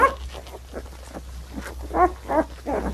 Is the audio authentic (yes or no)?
yes